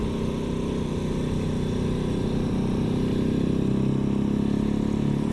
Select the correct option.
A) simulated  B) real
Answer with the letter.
B